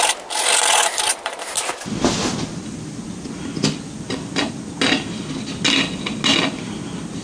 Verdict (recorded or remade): recorded